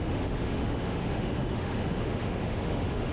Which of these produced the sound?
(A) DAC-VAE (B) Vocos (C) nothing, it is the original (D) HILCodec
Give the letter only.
A